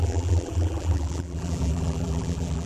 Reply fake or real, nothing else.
fake